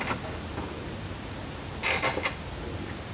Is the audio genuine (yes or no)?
yes